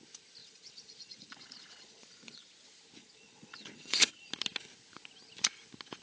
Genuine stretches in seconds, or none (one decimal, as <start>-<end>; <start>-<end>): 0.0-0.4; 2.5-3.0; 4.3-6.0